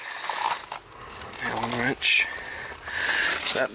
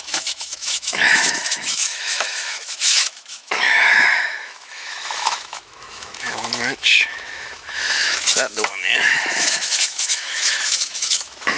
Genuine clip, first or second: first